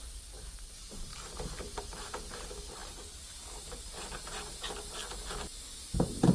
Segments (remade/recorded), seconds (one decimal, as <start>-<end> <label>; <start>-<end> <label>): 0.0-5.0 remade; 5.0-5.8 recorded; 5.8-6.3 remade